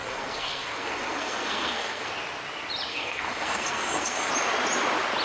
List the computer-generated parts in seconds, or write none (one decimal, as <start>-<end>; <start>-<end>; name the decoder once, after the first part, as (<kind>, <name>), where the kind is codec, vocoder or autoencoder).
0.0-2.1 (codec, SNAC); 2.9-4.3

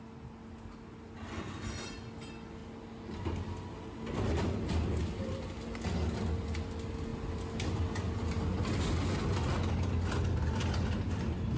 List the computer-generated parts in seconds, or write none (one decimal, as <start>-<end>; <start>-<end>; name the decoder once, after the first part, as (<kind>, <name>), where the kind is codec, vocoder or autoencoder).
none

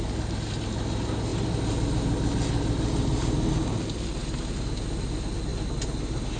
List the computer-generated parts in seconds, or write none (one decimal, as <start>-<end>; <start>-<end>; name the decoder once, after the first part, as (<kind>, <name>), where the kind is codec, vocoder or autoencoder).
none

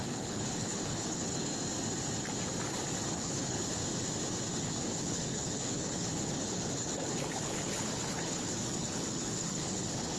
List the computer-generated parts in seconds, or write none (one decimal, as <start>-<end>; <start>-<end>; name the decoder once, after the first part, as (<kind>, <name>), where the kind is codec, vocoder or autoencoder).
0.0-1.5 (codec, HILCodec); 3.1-3.8; 4.6-10.2